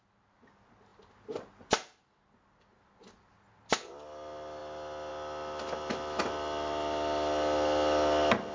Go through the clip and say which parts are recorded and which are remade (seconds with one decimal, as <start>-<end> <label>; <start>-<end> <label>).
0.0-8.5 recorded

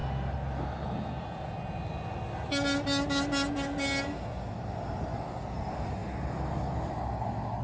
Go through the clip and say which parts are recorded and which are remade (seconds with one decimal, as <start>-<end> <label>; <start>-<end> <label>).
0.0-7.6 recorded

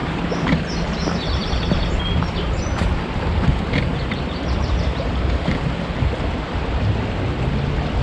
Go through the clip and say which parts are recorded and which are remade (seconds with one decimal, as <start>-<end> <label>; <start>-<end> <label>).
0.0-2.0 remade; 2.0-3.9 recorded; 3.9-5.1 remade; 5.1-8.0 recorded

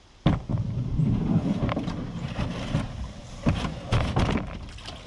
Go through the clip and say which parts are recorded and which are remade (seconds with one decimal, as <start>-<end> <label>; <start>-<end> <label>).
0.0-0.5 recorded; 0.5-3.6 remade; 3.6-5.1 recorded

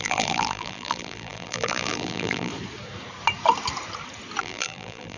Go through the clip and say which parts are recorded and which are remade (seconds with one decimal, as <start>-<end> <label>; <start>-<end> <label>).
0.0-2.5 remade; 2.5-4.4 recorded; 4.4-5.2 remade

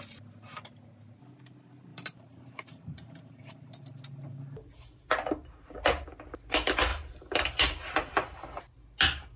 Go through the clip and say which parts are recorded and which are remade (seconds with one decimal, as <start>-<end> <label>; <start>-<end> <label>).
0.0-1.9 recorded; 1.9-3.7 remade; 3.7-6.9 recorded; 6.9-8.6 remade; 8.6-9.4 recorded

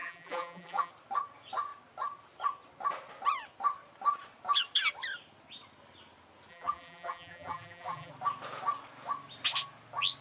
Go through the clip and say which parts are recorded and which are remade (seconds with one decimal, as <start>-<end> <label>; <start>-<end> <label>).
0.0-0.9 remade; 0.9-6.5 recorded; 6.5-8.1 remade; 8.1-10.2 recorded